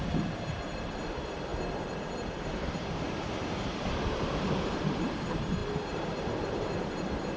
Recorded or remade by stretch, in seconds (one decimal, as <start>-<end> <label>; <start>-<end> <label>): 0.0-7.4 remade